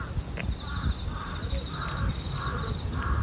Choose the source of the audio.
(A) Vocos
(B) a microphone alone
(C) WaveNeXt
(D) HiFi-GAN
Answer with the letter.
B